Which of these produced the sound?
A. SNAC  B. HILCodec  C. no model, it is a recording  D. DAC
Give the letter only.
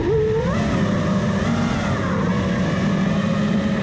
C